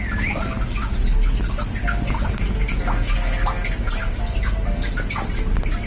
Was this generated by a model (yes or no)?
no